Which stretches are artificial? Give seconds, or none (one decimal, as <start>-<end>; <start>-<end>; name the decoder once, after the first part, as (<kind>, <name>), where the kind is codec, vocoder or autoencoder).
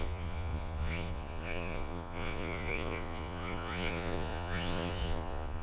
0.0-5.6 (vocoder, Vocos)